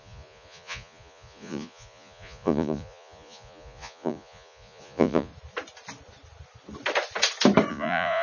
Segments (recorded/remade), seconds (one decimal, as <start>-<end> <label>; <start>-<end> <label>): 0.0-5.3 remade; 5.3-7.7 recorded; 7.7-8.2 remade